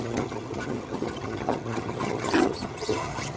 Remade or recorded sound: remade